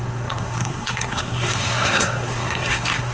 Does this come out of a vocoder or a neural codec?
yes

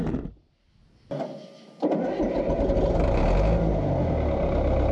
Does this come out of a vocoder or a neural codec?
no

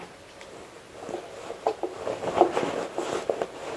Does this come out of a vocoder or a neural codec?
no